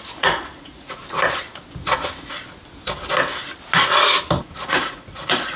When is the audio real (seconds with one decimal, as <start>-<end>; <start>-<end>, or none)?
1.0-4.4